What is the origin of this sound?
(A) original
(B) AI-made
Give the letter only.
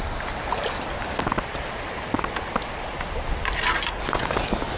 A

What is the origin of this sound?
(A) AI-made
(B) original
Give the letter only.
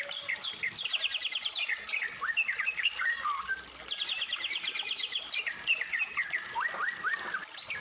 B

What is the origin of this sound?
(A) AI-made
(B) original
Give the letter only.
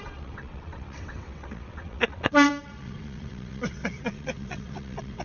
A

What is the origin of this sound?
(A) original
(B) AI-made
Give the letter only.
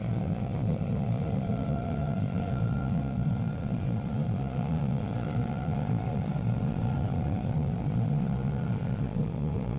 B